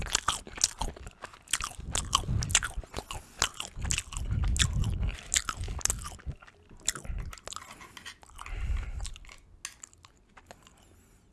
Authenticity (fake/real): real